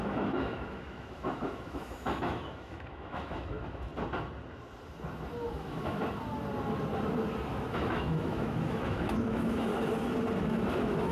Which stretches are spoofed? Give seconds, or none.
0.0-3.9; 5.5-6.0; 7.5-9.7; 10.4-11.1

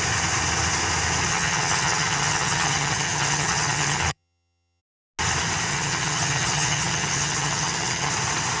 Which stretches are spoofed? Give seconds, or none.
1.3-4.8; 5.7-8.1

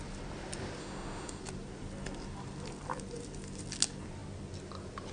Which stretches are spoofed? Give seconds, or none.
0.8-1.4